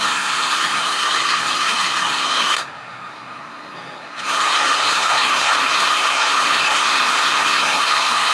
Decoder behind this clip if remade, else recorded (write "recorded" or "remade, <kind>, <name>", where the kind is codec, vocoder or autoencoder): remade, codec, SNAC